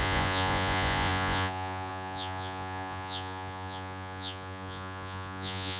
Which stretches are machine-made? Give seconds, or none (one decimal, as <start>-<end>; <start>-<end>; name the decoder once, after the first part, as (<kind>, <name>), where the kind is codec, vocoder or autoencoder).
0.0-5.8 (vocoder, Vocos)